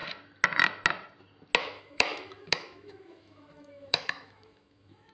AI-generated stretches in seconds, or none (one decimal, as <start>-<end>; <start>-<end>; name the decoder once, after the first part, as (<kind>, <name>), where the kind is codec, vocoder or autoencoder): 1.6-5.1 (autoencoder, DAC-VAE)